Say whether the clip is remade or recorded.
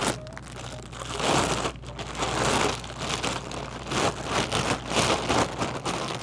recorded